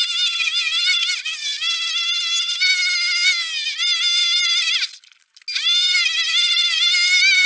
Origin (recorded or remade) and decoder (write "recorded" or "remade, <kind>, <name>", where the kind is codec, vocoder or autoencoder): recorded